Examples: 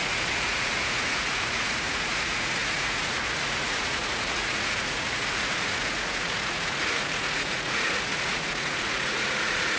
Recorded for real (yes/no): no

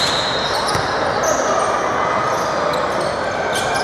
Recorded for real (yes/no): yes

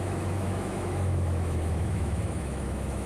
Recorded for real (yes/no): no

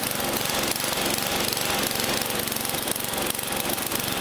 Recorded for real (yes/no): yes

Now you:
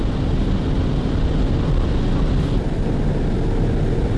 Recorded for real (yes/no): yes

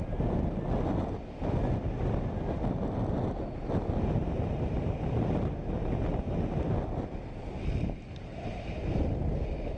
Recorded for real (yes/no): yes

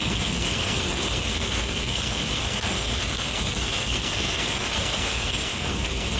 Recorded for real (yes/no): no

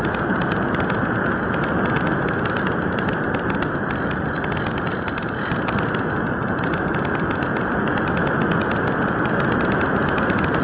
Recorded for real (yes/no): yes